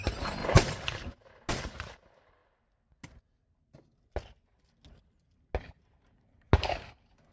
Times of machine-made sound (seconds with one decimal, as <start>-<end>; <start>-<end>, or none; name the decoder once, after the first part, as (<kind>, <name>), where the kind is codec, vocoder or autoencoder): none